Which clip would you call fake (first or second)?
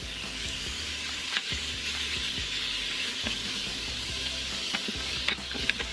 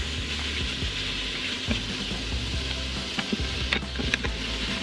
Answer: first